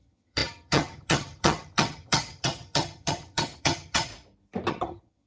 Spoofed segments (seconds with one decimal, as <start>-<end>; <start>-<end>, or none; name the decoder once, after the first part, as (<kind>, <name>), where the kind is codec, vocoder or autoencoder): 0.0-4.1 (vocoder, HiFi-GAN); 4.7-5.3